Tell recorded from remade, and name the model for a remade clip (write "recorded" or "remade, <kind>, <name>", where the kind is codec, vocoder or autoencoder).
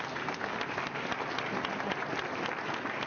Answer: recorded